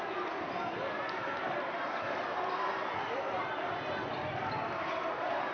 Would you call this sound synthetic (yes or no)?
yes